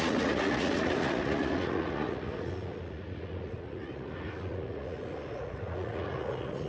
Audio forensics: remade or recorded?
remade